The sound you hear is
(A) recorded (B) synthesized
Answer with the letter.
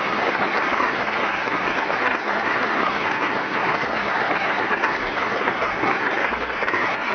B